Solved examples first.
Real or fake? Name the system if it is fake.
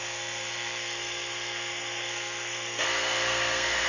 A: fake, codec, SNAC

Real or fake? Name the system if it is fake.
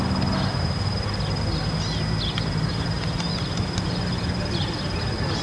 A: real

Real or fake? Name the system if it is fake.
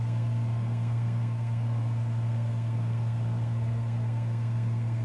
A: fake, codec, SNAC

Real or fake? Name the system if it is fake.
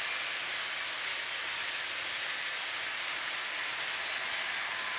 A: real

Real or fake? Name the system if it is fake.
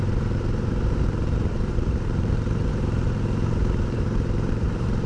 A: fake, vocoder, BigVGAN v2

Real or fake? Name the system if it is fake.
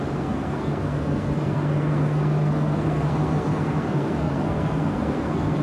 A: fake, codec, SNAC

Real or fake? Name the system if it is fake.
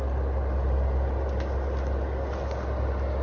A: real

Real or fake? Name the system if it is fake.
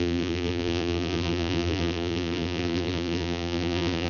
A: fake, vocoder, BigVGAN v2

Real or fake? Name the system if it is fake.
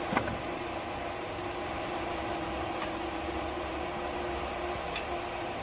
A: real